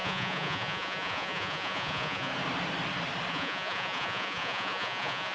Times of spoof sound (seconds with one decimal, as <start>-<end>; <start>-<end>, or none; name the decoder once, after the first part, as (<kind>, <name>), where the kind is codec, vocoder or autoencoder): 0.0-2.3 (vocoder, Vocos); 3.3-5.3